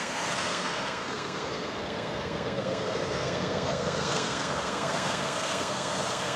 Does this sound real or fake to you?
fake